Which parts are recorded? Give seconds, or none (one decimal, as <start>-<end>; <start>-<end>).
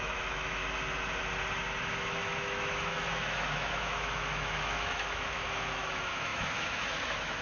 0.6-1.8